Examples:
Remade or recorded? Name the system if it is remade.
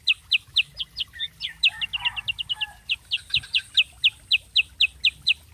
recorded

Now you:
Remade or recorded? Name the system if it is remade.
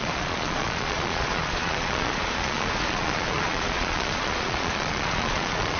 remade, vocoder, Vocos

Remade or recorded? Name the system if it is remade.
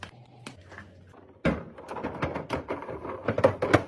recorded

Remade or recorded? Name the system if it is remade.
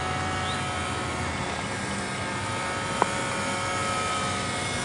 recorded